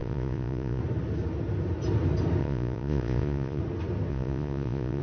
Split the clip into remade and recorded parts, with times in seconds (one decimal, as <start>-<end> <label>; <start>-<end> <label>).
0.0-0.8 remade; 0.8-2.4 recorded; 2.4-3.6 remade; 3.6-4.1 recorded; 4.1-5.0 remade

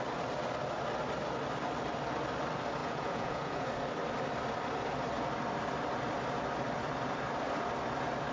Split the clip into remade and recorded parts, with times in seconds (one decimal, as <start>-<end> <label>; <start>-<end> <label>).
0.0-2.8 recorded; 2.8-3.7 remade; 3.7-8.3 recorded

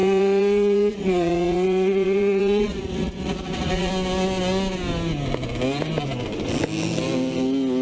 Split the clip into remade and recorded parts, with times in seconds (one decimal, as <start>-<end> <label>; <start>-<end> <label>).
0.0-3.9 remade; 3.9-7.8 recorded

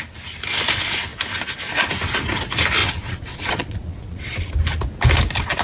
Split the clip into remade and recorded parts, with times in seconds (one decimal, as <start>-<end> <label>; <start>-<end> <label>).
0.0-2.8 recorded; 2.8-4.5 remade; 4.5-5.6 recorded